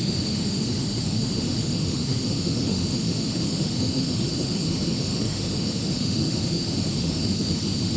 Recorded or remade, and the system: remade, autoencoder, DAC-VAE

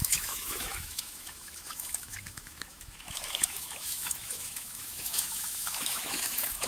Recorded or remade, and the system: remade, autoencoder, DAC-VAE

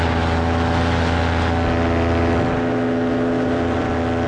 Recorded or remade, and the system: recorded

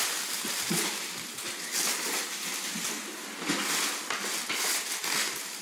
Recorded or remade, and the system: recorded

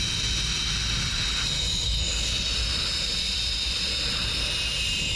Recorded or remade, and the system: recorded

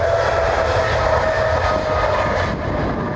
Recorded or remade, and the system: recorded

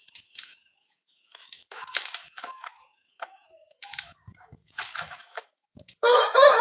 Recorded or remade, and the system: remade, autoencoder, DAC-VAE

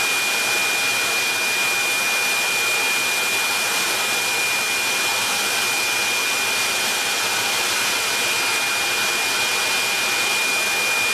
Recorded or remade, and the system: recorded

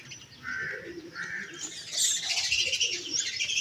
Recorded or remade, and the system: recorded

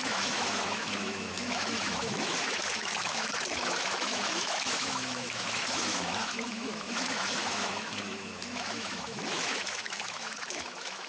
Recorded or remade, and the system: remade, autoencoder, DAC-VAE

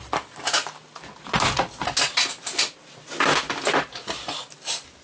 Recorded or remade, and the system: recorded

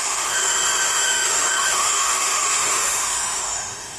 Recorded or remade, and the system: remade, autoencoder, DAC-VAE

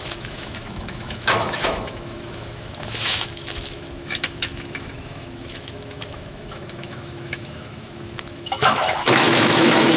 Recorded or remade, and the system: remade, autoencoder, DAC-VAE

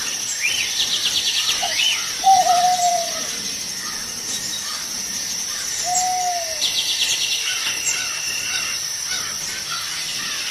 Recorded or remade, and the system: recorded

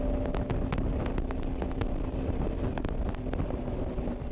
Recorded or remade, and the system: recorded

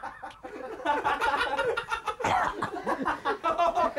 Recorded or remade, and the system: recorded